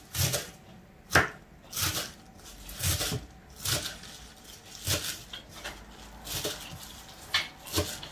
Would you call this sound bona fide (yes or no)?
yes